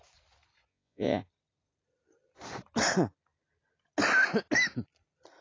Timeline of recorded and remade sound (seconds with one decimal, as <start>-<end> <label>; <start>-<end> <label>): 0.0-0.7 recorded; 0.7-1.3 remade; 1.3-5.4 recorded